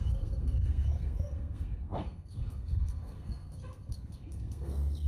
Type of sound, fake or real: fake